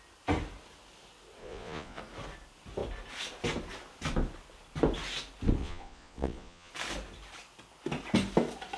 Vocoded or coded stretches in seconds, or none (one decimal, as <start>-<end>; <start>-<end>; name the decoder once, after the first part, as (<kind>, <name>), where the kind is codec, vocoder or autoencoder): 1.4-2.0 (vocoder, Vocos); 5.6-6.7